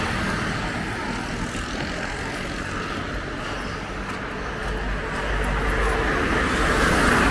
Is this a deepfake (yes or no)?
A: no